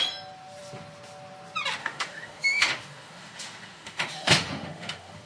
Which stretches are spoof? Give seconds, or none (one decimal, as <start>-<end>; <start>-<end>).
1.8-5.3